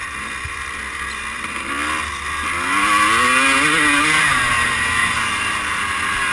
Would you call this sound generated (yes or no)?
no